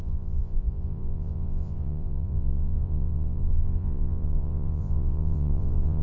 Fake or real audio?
fake